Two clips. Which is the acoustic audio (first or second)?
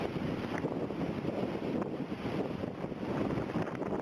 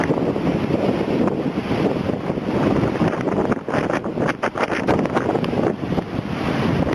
second